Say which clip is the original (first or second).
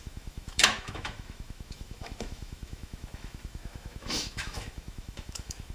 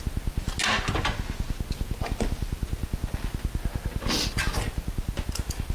second